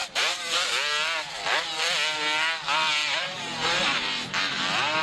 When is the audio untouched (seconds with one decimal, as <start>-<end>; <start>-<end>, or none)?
0.7-3.0; 4.6-5.0